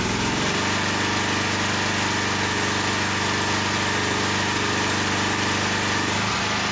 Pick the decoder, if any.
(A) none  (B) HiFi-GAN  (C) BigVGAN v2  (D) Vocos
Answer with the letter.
A